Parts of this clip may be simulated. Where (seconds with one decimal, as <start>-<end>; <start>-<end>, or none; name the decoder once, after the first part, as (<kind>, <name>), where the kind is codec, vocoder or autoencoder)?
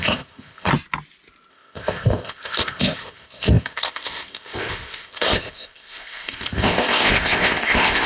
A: 0.0-0.7 (codec, ZipCodec); 1.5-8.1